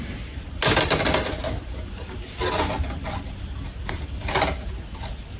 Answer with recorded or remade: recorded